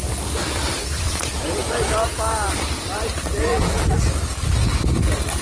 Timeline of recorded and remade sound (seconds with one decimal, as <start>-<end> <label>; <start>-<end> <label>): 0.0-3.5 remade; 3.5-4.7 recorded; 4.7-5.4 remade